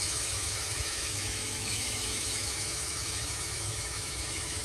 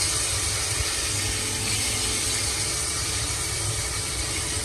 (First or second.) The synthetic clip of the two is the first